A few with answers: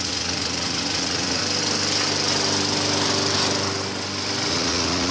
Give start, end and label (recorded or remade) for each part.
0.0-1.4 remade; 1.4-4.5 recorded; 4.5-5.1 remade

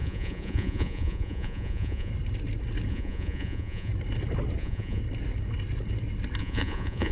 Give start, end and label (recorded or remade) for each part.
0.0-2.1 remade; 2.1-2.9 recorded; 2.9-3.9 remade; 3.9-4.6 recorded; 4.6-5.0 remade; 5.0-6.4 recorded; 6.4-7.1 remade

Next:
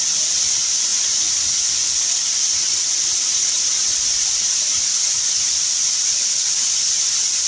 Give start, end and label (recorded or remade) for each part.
0.0-0.9 recorded; 0.9-1.7 remade; 1.7-2.5 recorded; 2.5-5.5 remade; 5.5-6.0 recorded; 6.0-6.6 remade; 6.6-7.5 recorded